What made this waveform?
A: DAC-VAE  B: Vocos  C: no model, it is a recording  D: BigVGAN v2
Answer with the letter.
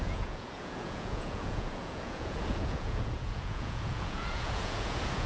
B